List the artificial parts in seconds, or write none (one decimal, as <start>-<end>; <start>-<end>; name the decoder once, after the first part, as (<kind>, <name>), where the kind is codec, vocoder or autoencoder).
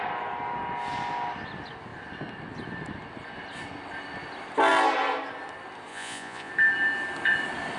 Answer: 5.9-6.5 (vocoder, Vocos)